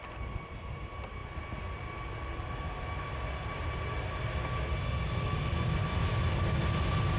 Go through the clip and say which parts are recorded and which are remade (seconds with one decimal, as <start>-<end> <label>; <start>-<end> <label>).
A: 0.0-7.2 recorded